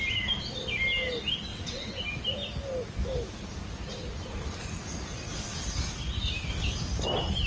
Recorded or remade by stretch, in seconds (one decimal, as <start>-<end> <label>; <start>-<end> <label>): 0.0-1.5 recorded; 1.5-2.0 remade; 2.0-7.5 recorded